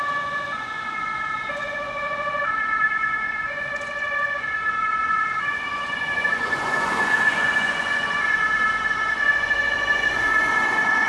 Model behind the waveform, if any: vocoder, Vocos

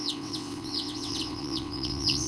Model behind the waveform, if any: vocoder, WaveNeXt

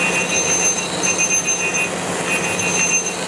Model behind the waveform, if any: none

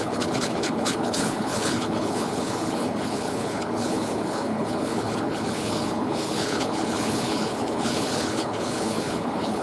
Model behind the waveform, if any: codec, HILCodec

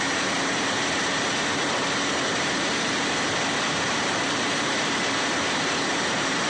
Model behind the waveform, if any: vocoder, BigVGAN v2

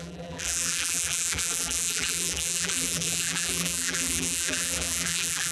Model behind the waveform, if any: vocoder, BigVGAN v2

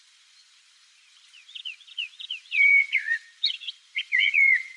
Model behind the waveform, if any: vocoder, Vocos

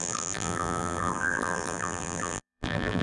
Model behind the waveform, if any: vocoder, BigVGAN v2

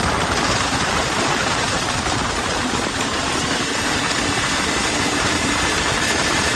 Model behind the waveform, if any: vocoder, BigVGAN v2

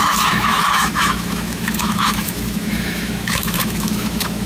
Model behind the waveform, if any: autoencoder, DAC-VAE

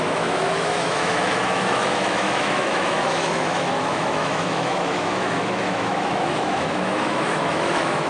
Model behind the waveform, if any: autoencoder, DAC-VAE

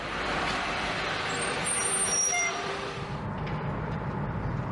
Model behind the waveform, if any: vocoder, BigVGAN v2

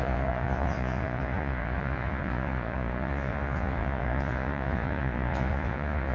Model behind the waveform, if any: vocoder, Vocos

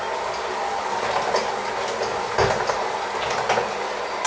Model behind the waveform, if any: none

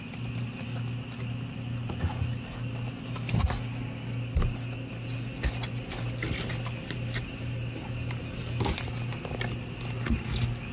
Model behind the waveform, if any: none